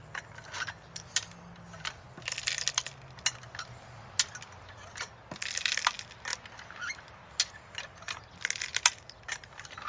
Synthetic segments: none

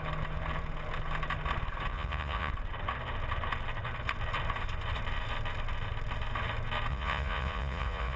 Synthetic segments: 1.9-2.5; 6.9-8.2

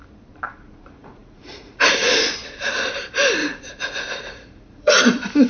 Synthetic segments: 1.0-1.9; 3.4-5.0

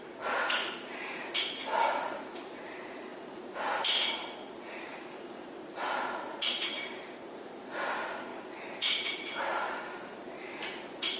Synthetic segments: 0.0-11.2